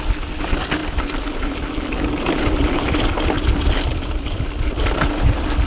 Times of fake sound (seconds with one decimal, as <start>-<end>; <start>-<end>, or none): none